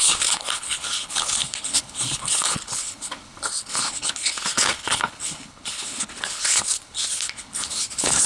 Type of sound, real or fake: fake